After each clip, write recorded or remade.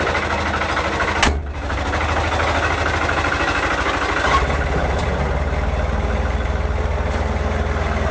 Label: recorded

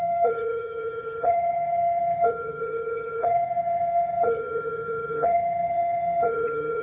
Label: remade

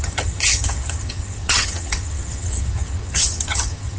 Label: remade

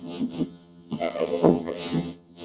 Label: remade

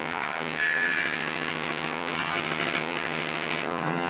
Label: remade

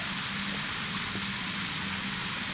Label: recorded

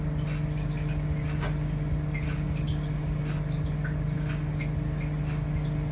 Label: recorded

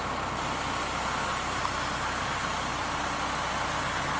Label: recorded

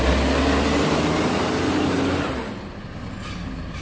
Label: recorded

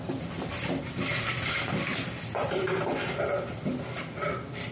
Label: recorded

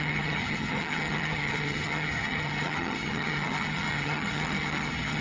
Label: remade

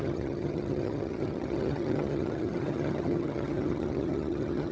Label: remade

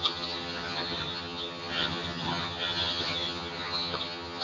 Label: remade